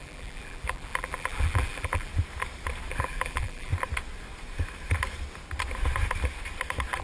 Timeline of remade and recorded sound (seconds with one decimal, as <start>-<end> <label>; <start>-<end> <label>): 0.0-2.1 remade; 2.1-2.9 recorded; 2.9-3.7 remade; 3.7-7.0 recorded